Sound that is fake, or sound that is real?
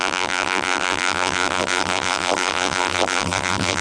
fake